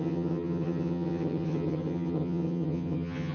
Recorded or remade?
remade